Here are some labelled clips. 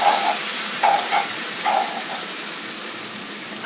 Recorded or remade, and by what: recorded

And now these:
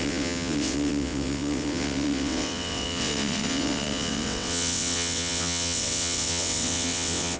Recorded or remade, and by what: remade, vocoder, WaveNeXt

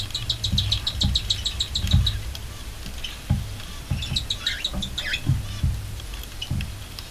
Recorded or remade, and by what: recorded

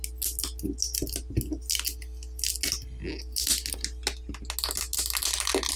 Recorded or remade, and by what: recorded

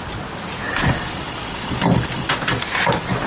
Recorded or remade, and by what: recorded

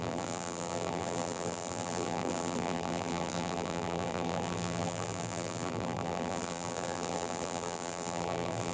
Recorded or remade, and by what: remade, vocoder, BigVGAN v2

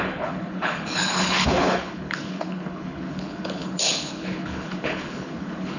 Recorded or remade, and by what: remade, codec, HILCodec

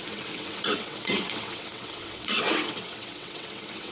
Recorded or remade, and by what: remade, vocoder, WaveNeXt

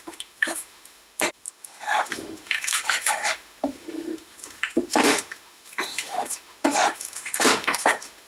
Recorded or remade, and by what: remade, autoencoder, DAC-VAE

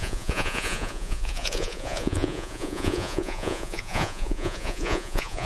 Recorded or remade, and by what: remade, vocoder, Vocos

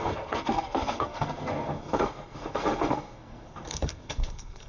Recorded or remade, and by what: remade, codec, SNAC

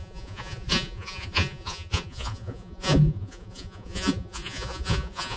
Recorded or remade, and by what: remade, vocoder, Vocos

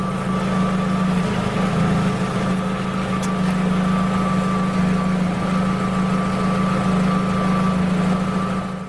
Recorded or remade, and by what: recorded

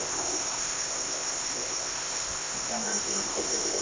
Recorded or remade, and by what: remade, codec, ZipCodec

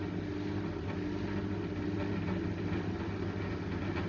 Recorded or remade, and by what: recorded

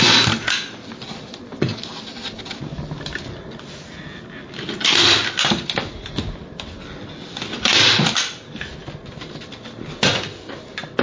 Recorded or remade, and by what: recorded